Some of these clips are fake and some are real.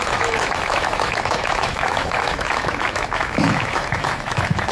fake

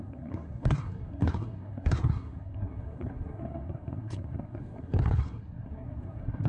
fake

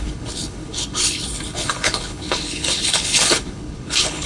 fake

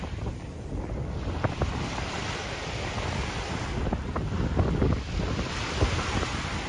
fake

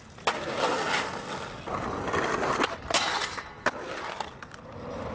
real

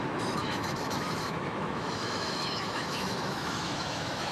fake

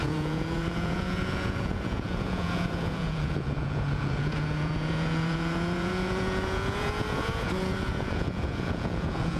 fake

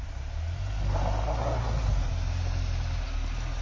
real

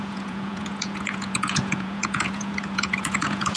fake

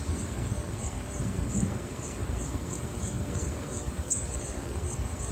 fake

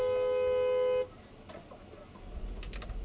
real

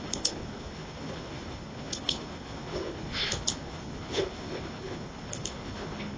fake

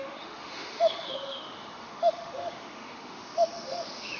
fake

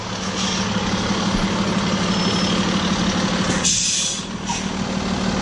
real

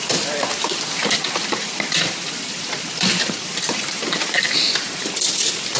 fake